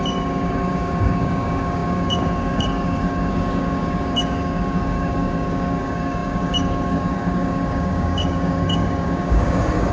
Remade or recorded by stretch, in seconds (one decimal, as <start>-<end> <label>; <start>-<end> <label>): 0.0-9.9 remade

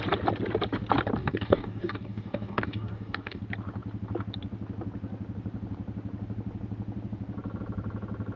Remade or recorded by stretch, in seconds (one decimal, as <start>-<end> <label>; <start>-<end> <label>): 0.0-1.2 recorded; 1.2-3.4 remade; 3.4-8.4 recorded